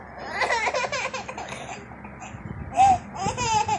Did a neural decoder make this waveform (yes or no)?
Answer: no